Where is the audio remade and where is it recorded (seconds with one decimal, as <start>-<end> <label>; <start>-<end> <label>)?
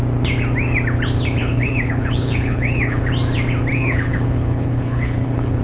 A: 0.0-1.4 recorded; 1.4-3.1 remade; 3.1-3.7 recorded; 3.7-5.6 remade